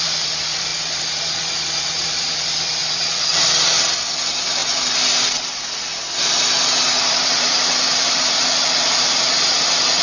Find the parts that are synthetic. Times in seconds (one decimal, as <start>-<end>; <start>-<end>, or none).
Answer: 0.0-4.6; 7.0-10.0